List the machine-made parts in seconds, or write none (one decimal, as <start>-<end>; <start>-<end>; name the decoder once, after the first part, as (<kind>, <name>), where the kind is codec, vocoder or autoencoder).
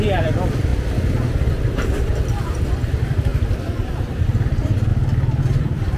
0.0-0.7 (vocoder, BigVGAN v2); 1.5-3.3; 3.9-4.9; 5.4-6.0